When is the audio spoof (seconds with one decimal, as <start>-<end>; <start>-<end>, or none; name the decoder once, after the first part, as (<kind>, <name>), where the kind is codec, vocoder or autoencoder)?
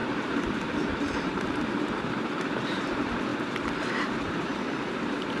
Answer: 0.0-3.3 (vocoder, BigVGAN v2); 3.9-4.5